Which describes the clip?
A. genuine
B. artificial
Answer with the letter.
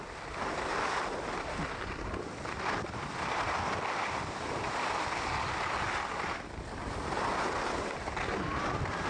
A